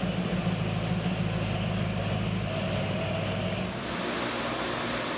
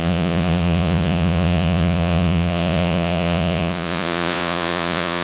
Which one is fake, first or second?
second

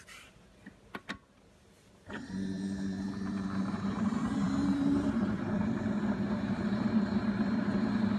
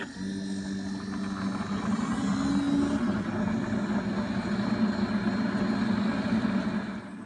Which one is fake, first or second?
first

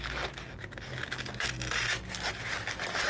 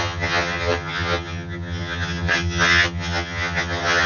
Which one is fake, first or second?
second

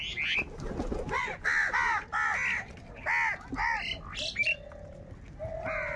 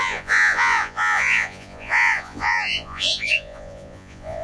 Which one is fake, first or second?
second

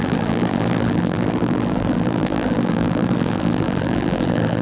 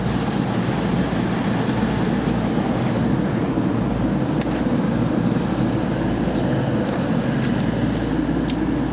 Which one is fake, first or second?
first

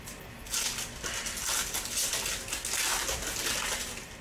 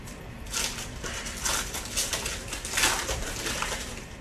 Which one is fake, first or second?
second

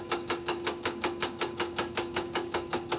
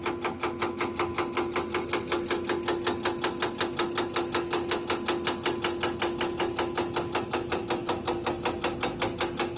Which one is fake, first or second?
first